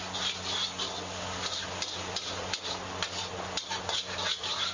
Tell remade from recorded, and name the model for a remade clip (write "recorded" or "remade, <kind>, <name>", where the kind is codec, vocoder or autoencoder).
recorded